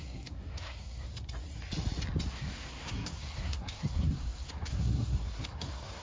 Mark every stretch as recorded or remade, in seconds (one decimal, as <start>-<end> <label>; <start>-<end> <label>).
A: 0.0-1.1 remade; 1.1-2.3 recorded; 2.3-6.0 remade

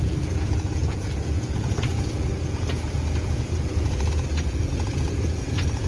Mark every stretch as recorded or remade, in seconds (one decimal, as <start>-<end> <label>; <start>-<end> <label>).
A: 0.0-5.9 remade

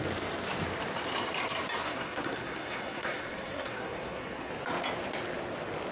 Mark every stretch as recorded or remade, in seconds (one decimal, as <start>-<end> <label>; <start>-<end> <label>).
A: 0.0-1.8 recorded; 1.8-4.5 remade; 4.5-5.9 recorded

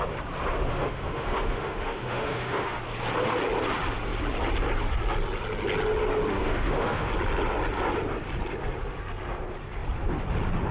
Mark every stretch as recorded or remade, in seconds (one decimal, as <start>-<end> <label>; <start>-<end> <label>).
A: 0.0-0.7 recorded; 0.7-2.8 remade; 2.8-6.3 recorded; 6.3-7.1 remade; 7.1-10.7 recorded

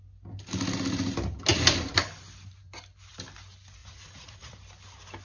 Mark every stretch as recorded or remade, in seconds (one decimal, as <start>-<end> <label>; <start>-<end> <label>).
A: 0.0-3.8 recorded; 3.8-4.5 remade; 4.5-5.2 recorded

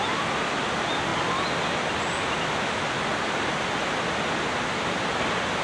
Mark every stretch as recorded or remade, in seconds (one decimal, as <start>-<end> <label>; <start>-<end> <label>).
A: 0.0-5.6 recorded

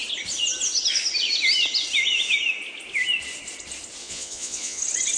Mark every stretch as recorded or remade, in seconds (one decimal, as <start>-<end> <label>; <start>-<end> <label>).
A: 0.0-4.0 recorded; 4.0-4.8 remade; 4.8-5.2 recorded